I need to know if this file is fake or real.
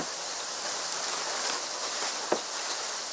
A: real